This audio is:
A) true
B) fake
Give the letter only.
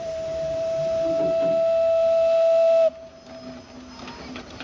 A